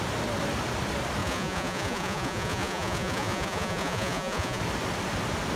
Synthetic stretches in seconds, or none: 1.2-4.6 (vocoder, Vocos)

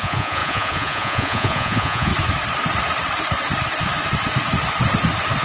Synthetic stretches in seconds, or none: 0.0-2.1 (vocoder, Vocos)

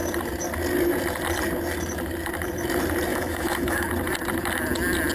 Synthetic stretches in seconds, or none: 3.1-3.9 (autoencoder, DAC-VAE)

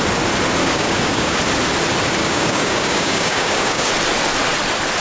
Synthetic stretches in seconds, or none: 0.6-1.4 (codec, DAC); 2.2-3.9

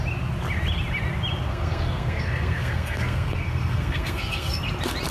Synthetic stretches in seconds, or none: 1.5-4.6 (codec, SNAC)